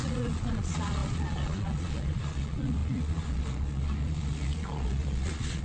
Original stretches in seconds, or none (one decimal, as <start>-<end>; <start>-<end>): none